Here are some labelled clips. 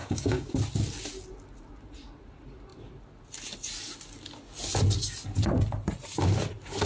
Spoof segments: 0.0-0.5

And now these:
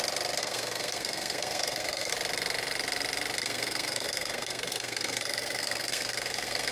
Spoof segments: 0.4-2.1; 3.4-6.7

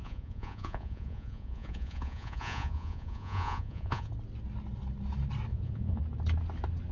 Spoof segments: 0.0-4.1; 5.5-6.0

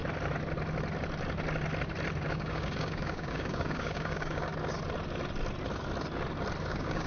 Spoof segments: 2.3-4.5; 6.6-7.1

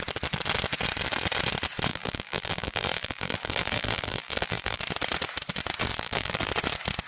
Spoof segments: 1.9-4.8; 5.9-6.5

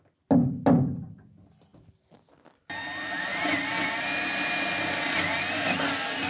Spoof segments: none

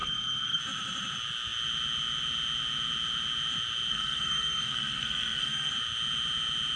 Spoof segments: 0.0-0.6; 3.9-5.7

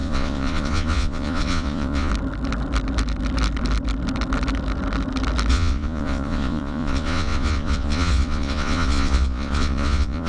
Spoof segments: 0.0-2.1; 5.5-10.3